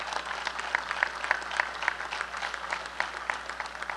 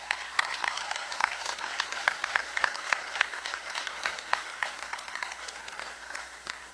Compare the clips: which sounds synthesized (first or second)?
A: second